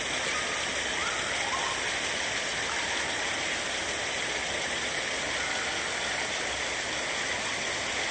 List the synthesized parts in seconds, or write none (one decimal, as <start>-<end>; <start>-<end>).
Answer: none